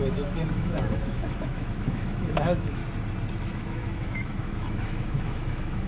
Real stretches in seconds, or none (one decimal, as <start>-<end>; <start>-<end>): 2.8-3.3